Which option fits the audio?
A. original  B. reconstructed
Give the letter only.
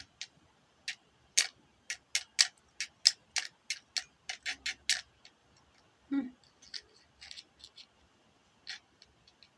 A